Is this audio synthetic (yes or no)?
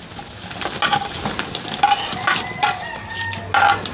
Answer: no